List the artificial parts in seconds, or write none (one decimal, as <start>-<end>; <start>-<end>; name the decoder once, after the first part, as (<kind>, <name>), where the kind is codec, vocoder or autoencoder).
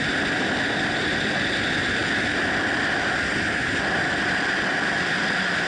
none